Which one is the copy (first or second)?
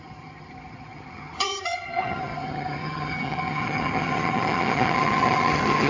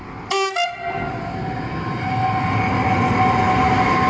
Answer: first